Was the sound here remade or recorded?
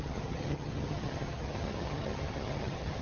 remade